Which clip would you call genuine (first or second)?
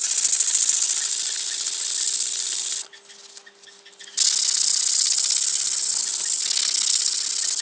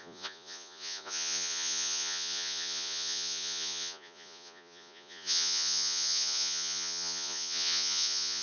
first